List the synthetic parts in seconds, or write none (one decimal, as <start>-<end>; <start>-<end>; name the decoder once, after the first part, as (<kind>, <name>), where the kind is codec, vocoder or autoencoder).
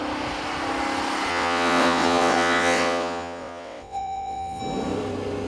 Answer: 1.3-4.6 (vocoder, WaveNeXt)